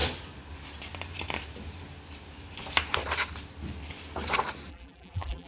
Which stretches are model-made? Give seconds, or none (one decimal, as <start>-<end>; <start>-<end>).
4.7-5.5